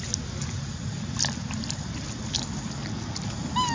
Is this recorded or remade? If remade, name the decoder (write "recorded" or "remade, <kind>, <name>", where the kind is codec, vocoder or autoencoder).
recorded